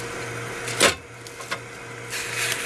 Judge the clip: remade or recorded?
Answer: recorded